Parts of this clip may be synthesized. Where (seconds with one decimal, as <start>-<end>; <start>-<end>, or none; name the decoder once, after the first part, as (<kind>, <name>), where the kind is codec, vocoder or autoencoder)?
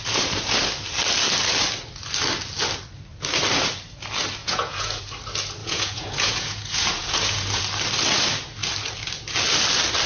4.4-5.0 (vocoder, Vocos); 5.6-7.6